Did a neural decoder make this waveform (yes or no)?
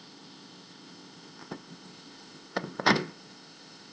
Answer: yes